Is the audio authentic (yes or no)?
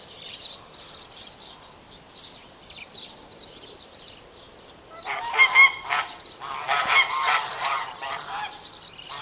no